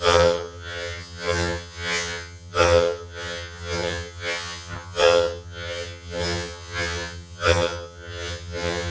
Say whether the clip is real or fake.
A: fake